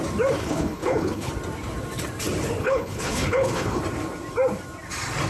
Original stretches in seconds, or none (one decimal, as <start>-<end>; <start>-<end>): 0.0-0.4; 1.3-2.6; 3.8-5.3